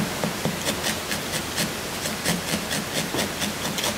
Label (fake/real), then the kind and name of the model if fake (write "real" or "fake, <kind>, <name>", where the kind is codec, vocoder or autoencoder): real